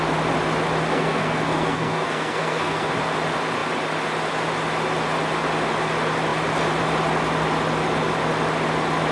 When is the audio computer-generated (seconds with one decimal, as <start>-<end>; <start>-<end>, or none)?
0.9-2.9